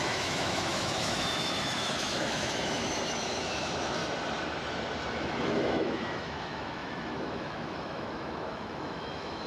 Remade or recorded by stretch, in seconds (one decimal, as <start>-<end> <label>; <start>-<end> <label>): 0.0-4.0 remade; 4.0-5.1 recorded; 5.1-9.5 remade